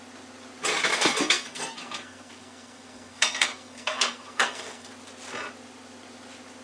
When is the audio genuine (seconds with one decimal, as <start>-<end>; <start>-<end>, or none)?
0.0-0.9; 4.9-6.6